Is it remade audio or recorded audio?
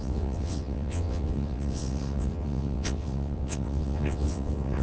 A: remade